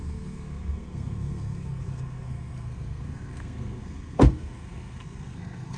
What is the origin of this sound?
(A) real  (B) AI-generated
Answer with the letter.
B